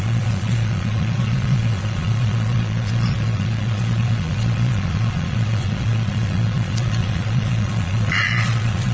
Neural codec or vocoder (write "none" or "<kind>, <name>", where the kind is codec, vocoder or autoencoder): vocoder, Vocos